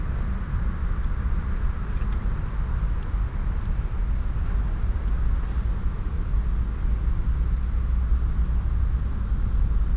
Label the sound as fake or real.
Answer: real